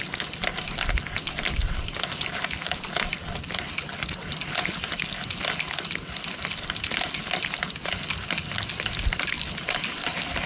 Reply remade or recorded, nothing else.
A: recorded